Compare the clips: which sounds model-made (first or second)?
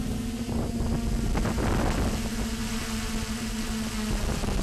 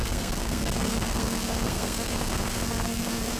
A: second